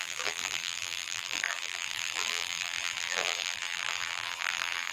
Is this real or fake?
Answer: fake